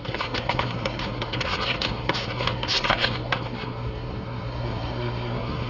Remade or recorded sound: remade